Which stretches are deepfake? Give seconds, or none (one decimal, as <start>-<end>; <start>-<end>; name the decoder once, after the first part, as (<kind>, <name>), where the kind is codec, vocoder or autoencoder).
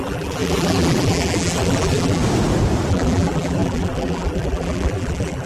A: 0.0-2.2 (vocoder, BigVGAN v2); 2.9-5.5